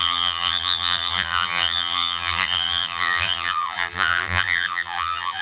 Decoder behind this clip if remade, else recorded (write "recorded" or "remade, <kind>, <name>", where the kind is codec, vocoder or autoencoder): remade, vocoder, BigVGAN v2